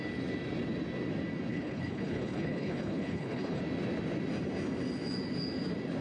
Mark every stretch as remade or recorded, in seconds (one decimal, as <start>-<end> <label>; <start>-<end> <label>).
0.0-1.5 recorded; 1.5-3.6 remade; 3.6-6.0 recorded

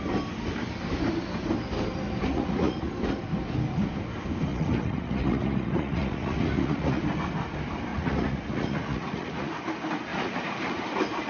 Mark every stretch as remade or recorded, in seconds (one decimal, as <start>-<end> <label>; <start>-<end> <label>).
0.0-2.3 recorded; 2.3-2.9 remade; 2.9-4.5 recorded; 4.5-7.0 remade; 7.0-7.9 recorded; 7.9-9.5 remade; 9.5-10.1 recorded; 10.1-10.8 remade; 10.8-11.3 recorded

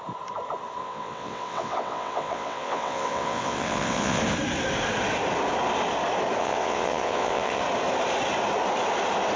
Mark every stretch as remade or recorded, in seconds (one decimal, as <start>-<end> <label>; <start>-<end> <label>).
0.0-0.8 recorded; 0.8-4.2 remade; 4.2-6.4 recorded; 6.4-7.6 remade; 7.6-9.4 recorded